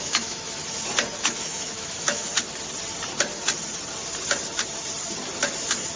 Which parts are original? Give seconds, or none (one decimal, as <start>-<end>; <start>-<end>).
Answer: 0.6-1.2; 2.3-6.0